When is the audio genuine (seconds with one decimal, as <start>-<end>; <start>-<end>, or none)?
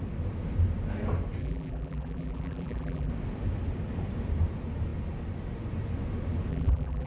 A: 0.0-1.4; 3.1-6.5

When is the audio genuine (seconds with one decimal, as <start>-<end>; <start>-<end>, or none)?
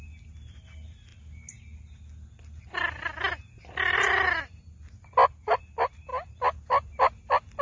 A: 0.0-7.6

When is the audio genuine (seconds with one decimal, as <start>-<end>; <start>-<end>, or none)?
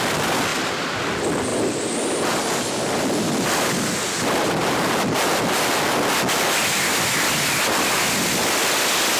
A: 0.0-0.5; 1.0-1.5; 5.8-6.6; 8.4-9.2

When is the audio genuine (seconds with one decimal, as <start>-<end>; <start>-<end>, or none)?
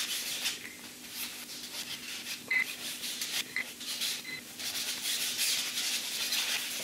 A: 0.0-2.5; 4.1-6.8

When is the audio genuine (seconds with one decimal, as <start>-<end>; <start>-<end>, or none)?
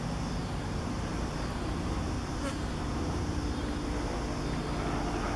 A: 0.0-0.4; 3.6-5.4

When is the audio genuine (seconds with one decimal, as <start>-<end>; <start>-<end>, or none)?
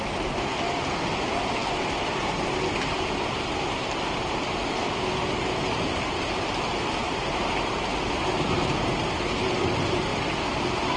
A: 0.0-5.2; 9.6-11.0